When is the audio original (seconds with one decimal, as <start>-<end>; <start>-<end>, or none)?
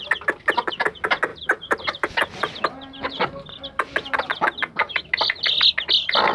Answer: 0.0-1.3; 2.1-6.3